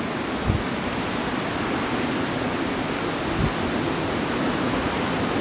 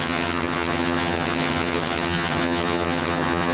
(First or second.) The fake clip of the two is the second